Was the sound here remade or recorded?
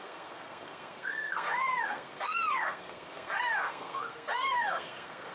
remade